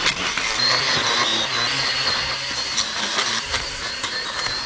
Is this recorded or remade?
recorded